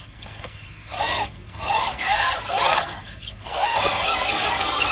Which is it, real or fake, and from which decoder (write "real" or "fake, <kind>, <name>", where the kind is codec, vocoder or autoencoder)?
fake, codec, SNAC